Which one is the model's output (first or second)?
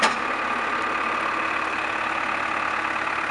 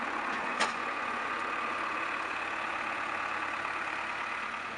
second